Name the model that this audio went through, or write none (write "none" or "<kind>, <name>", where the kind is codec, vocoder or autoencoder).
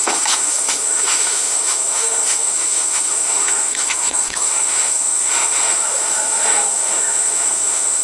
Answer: autoencoder, DAC-VAE